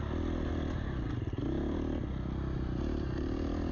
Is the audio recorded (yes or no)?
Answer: yes